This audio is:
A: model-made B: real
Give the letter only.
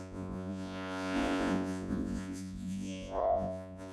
A